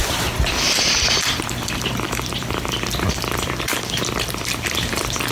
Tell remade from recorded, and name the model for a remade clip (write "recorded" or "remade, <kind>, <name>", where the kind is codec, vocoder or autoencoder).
remade, vocoder, BigVGAN v2